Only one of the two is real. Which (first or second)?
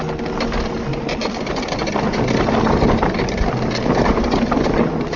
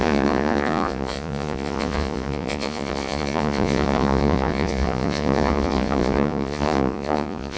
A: first